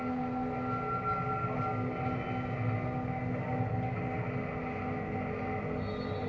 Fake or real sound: real